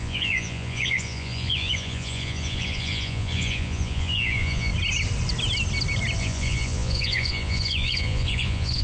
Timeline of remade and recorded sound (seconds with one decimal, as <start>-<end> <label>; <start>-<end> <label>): 0.0-4.7 remade; 4.7-6.2 recorded; 6.2-8.8 remade